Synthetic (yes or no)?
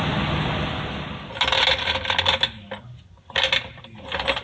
no